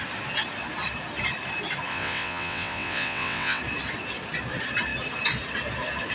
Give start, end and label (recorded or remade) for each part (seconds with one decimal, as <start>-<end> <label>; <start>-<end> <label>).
0.0-1.9 recorded; 1.9-3.6 remade; 3.6-6.1 recorded

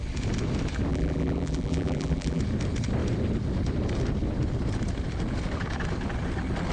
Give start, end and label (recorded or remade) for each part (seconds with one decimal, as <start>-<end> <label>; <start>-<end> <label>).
0.0-0.9 recorded; 0.9-2.4 remade; 2.4-6.7 recorded

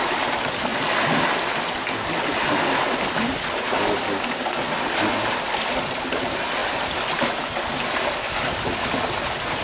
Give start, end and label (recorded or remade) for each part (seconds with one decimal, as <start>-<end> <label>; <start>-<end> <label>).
0.0-9.6 recorded

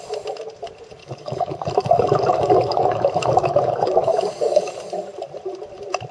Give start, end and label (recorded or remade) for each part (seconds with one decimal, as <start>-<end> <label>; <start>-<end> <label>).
0.0-1.0 recorded; 1.0-4.7 remade; 4.7-6.1 recorded

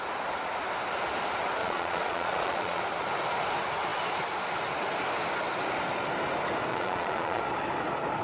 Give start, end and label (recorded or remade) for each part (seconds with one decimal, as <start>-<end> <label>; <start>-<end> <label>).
0.0-1.6 recorded; 1.6-2.8 remade; 2.8-6.7 recorded; 6.7-7.4 remade; 7.4-8.2 recorded

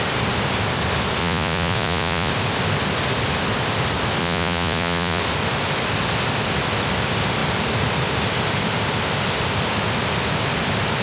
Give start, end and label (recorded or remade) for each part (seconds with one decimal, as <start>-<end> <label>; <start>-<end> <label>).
0.0-1.2 recorded; 1.2-2.3 remade; 2.3-4.2 recorded; 4.2-5.2 remade; 5.2-11.0 recorded